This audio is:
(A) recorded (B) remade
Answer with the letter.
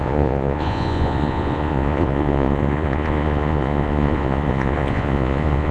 B